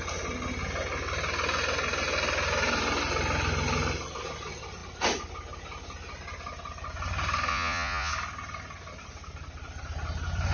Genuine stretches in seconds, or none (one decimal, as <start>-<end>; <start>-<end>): 0.0-7.5; 8.1-10.5